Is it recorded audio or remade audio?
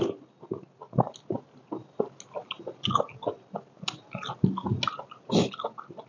recorded